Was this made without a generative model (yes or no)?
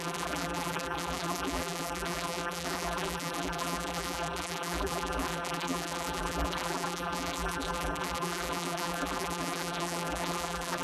no